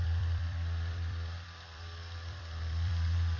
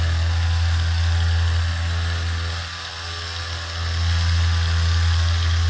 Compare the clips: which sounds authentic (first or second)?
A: second